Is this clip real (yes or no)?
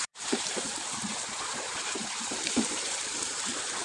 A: no